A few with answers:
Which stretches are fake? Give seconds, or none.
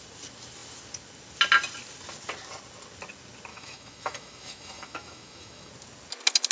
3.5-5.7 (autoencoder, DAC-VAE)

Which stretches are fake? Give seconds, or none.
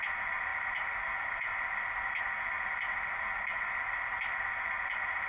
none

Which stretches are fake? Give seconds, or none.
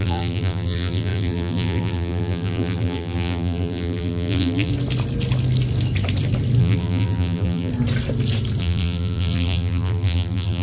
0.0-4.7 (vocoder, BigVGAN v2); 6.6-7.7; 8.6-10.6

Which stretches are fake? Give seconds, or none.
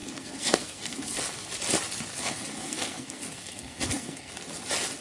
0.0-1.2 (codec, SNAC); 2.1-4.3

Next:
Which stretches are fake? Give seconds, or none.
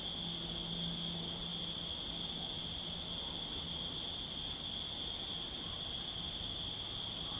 none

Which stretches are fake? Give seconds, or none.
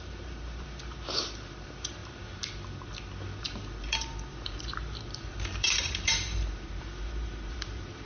0.0-2.0 (vocoder, BigVGAN v2); 3.4-8.1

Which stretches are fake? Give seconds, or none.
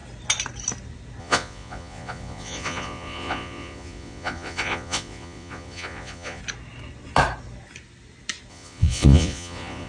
1.2-6.4 (vocoder, Vocos); 8.5-9.9